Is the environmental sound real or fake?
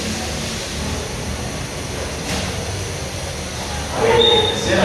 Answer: real